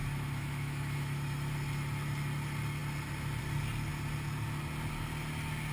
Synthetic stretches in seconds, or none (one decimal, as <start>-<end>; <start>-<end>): 0.0-1.5